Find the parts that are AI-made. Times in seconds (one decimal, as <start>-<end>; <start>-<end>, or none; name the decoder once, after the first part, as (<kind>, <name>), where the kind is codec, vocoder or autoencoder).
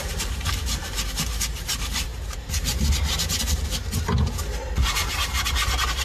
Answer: 0.0-3.8 (vocoder, BigVGAN v2); 4.7-6.0